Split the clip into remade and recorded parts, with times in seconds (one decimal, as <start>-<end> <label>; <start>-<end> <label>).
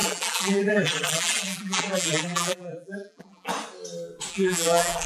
0.0-3.5 remade; 3.5-4.3 recorded; 4.3-5.1 remade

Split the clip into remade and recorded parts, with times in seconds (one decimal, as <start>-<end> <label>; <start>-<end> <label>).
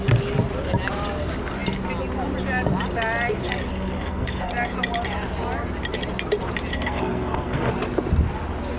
0.0-3.7 recorded; 3.7-4.5 remade; 4.5-6.7 recorded; 6.7-7.7 remade; 7.7-8.8 recorded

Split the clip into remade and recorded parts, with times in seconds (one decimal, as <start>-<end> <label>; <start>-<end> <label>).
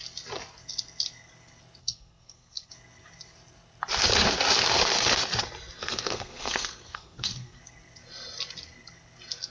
0.0-1.8 recorded; 1.8-2.7 remade; 2.7-5.8 recorded; 5.8-7.6 remade; 7.6-9.5 recorded